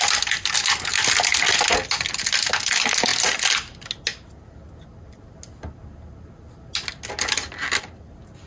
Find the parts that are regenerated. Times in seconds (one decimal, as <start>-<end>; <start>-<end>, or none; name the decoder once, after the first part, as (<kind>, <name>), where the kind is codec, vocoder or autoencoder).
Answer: none